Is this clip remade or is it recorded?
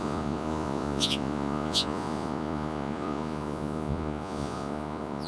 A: remade